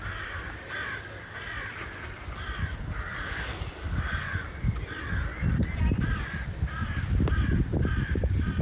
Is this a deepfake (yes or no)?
yes